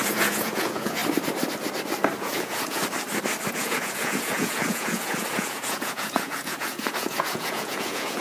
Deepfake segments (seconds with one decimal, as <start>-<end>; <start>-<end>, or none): 0.0-1.0; 2.2-2.8; 3.5-8.2